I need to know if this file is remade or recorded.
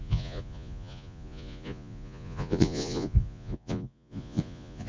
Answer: remade